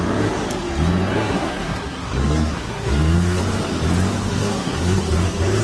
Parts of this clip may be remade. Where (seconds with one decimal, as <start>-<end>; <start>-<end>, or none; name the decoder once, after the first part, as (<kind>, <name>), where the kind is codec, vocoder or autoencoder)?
1.1-3.4 (codec, SNAC); 4.3-5.0